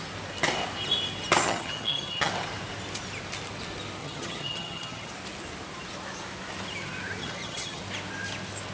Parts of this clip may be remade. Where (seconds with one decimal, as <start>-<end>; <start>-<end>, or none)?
1.4-2.3; 4.0-5.1; 7.2-7.8

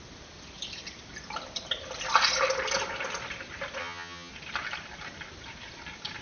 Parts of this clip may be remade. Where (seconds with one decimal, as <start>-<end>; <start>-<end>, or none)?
3.8-4.3

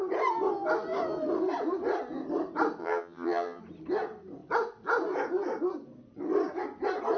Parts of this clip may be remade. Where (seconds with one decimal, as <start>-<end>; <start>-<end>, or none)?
2.8-3.6

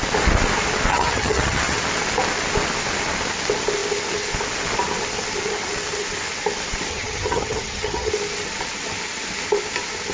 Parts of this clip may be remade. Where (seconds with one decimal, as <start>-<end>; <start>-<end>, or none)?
0.9-1.8; 6.9-8.1

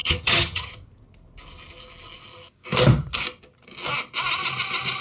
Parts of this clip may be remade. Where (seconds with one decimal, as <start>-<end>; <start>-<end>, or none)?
0.0-0.7

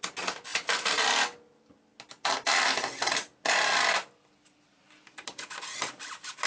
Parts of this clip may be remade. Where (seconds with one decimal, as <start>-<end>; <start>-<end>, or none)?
none

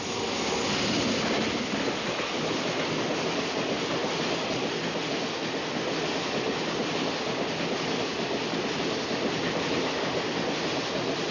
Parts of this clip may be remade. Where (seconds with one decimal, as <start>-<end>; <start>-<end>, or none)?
none

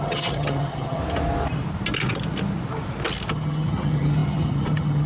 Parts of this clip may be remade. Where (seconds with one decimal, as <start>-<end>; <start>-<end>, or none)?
0.0-1.0; 3.3-5.1